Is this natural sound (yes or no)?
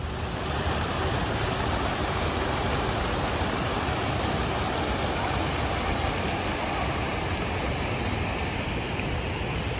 yes